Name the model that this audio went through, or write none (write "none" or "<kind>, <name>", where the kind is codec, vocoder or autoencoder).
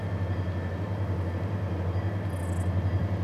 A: none